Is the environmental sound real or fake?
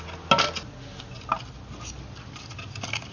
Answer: real